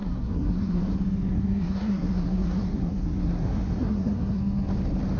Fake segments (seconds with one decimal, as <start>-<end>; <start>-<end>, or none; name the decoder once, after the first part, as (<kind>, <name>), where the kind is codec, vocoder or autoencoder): 0.0-0.8 (codec, SNAC); 1.3-4.4